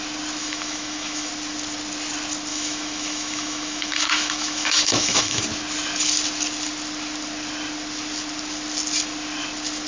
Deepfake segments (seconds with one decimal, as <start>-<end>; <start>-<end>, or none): 0.4-1.3; 2.5-5.4